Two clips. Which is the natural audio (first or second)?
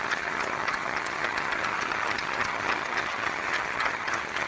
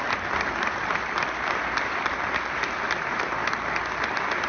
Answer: second